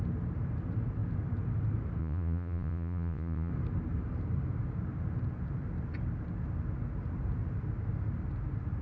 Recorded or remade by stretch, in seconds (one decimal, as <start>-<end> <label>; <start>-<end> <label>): 0.0-2.0 recorded; 2.0-3.5 remade; 3.5-8.8 recorded